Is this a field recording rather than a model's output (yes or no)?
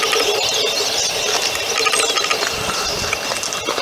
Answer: yes